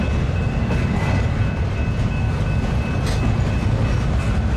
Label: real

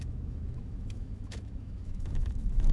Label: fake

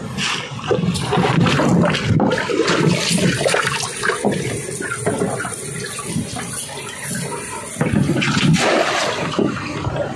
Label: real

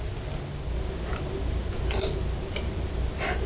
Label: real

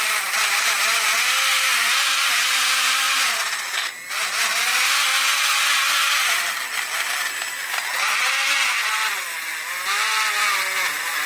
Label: real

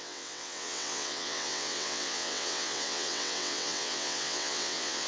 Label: fake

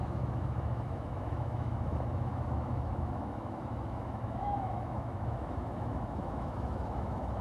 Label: fake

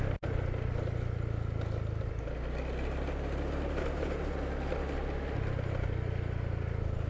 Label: real